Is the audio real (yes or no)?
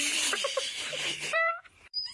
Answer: no